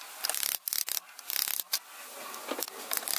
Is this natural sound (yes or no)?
yes